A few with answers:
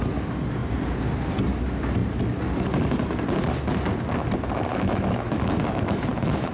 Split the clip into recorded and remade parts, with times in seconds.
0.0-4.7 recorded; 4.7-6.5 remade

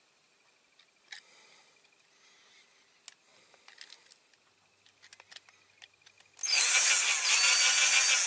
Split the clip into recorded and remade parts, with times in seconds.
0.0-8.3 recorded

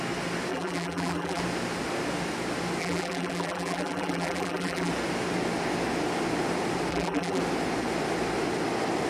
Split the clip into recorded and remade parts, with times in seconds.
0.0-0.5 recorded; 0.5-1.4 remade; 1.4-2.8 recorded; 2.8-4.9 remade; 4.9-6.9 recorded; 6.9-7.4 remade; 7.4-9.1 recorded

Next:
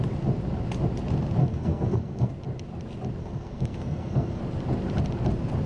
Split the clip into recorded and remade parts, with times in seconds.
0.0-1.4 recorded; 1.4-2.3 remade; 2.3-3.2 recorded; 3.2-4.4 remade; 4.4-5.7 recorded

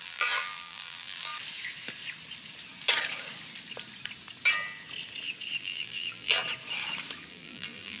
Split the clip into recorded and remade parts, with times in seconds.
0.0-1.3 remade; 1.3-5.6 recorded; 5.6-6.4 remade; 6.4-7.3 recorded; 7.3-8.0 remade

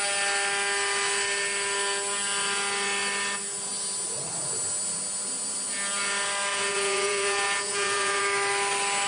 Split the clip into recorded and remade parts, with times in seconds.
0.0-6.5 recorded; 6.5-8.2 remade; 8.2-9.1 recorded

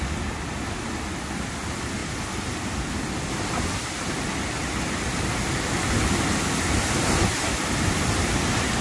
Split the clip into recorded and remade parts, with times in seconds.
0.0-8.8 recorded

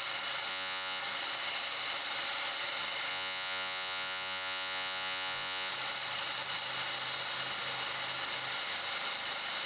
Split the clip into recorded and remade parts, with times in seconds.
0.0-0.5 recorded; 0.5-1.0 remade; 1.0-3.1 recorded; 3.1-5.7 remade; 5.7-9.7 recorded